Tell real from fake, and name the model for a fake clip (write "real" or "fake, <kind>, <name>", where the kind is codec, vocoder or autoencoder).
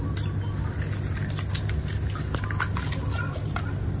real